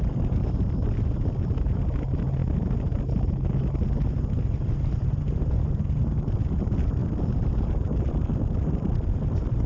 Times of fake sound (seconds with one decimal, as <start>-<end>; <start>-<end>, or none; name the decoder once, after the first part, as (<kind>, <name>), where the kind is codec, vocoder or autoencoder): none